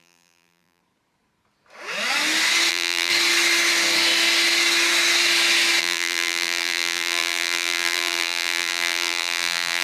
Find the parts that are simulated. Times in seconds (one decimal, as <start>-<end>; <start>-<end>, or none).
0.0-0.8; 2.7-3.1; 5.8-9.8